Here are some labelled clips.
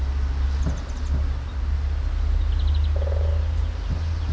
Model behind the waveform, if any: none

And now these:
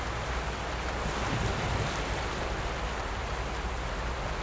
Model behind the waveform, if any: none